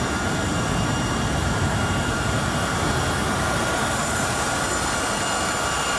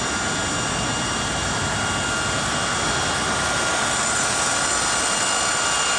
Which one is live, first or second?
second